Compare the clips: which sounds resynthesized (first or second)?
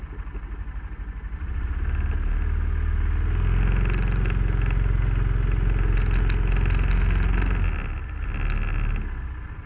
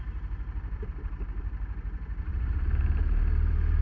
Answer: second